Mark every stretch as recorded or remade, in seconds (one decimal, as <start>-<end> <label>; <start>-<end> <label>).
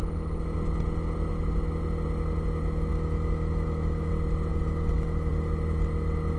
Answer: 0.0-2.9 recorded; 2.9-4.1 remade; 4.1-4.5 recorded; 4.5-5.3 remade; 5.3-6.4 recorded